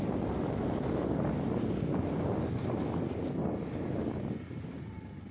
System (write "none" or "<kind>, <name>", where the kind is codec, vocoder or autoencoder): none